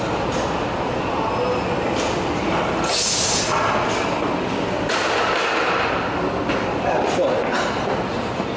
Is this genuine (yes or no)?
yes